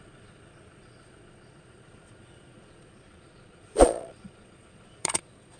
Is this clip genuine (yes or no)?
no